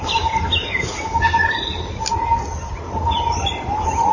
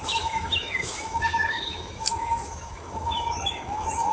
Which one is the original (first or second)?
first